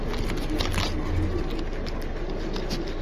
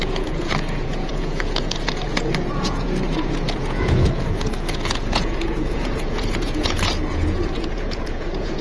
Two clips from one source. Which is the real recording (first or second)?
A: first